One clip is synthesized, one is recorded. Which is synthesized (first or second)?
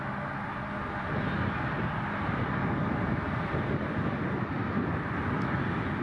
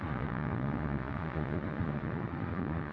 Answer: second